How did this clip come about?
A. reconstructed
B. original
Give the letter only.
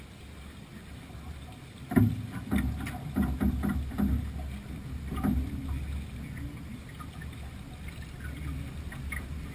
B